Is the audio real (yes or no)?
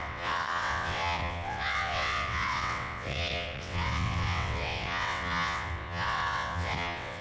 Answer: no